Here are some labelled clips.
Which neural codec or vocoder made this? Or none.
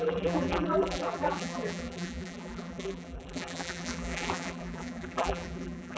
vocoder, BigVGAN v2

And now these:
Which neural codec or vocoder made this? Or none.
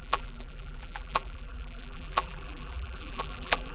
vocoder, BigVGAN v2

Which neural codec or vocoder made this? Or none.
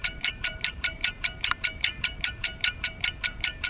vocoder, BigVGAN v2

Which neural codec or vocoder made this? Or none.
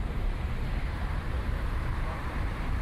vocoder, BigVGAN v2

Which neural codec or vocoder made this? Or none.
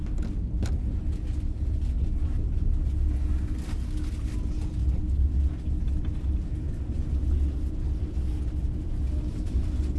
none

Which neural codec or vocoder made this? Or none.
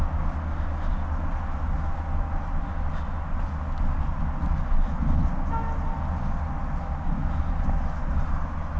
none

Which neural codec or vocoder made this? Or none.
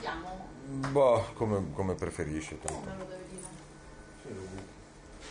none